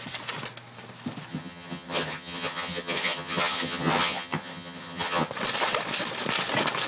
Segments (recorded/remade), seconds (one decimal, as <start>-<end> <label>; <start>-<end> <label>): 0.0-1.3 recorded; 1.3-5.3 remade; 5.3-6.9 recorded